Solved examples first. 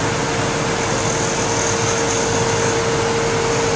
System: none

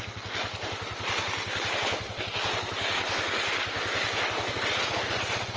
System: none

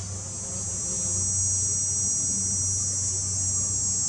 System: none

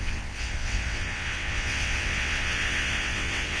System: vocoder, WaveNeXt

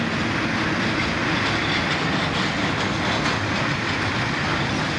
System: none